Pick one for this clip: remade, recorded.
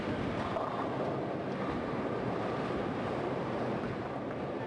recorded